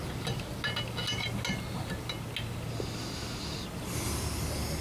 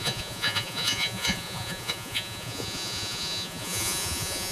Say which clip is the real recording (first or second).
first